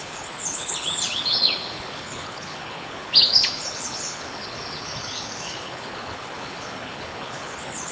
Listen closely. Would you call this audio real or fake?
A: fake